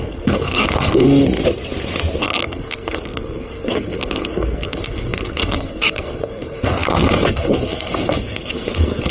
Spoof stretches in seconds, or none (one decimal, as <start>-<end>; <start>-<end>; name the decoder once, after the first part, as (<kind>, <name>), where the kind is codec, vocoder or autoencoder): 0.0-1.2 (codec, SNAC); 2.2-9.1